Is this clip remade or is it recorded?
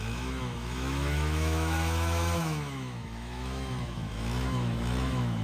remade